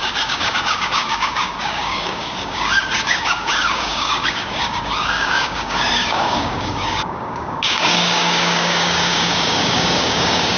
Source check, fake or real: fake